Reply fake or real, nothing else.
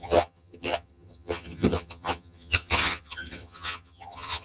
fake